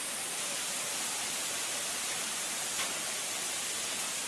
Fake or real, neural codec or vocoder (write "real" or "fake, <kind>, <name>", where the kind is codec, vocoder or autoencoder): real